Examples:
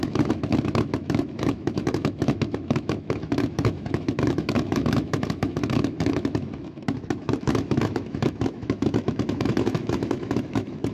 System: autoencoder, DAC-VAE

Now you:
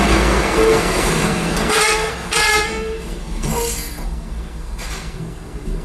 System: codec, SNAC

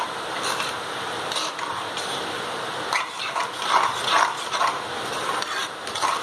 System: none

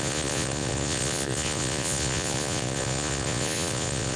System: vocoder, Vocos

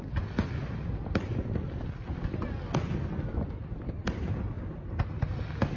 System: none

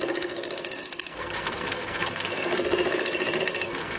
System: codec, SNAC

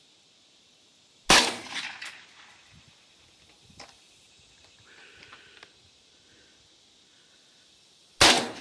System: none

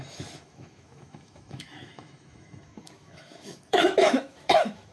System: autoencoder, DAC-VAE